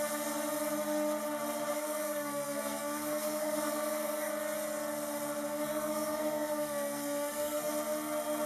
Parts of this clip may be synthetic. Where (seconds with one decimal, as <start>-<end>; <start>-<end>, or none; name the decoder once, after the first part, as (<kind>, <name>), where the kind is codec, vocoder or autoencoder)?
1.7-4.3 (codec, SNAC); 5.5-7.7